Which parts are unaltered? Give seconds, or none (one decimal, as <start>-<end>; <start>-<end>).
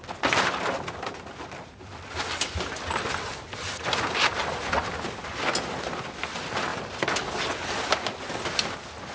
0.0-9.1